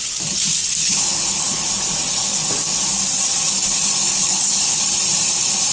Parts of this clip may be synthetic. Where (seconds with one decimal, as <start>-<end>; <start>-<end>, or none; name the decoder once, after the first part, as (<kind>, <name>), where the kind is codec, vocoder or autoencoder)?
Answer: 0.8-1.7 (codec, HILCodec); 4.1-4.8